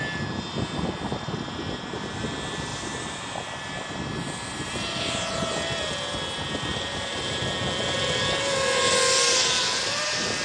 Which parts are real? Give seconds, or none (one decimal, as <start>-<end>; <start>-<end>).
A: 0.0-2.7; 3.2-6.7; 7.4-10.4